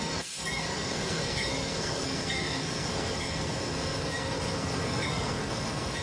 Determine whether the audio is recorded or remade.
remade